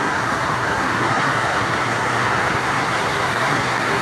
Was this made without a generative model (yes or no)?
no